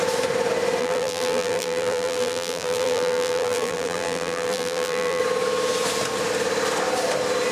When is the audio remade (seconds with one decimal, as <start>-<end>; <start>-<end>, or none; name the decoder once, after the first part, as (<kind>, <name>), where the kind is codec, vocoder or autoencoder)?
0.8-5.2 (vocoder, BigVGAN v2)